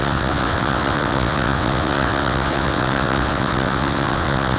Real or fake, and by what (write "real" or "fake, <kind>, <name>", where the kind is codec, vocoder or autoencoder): fake, vocoder, WaveNeXt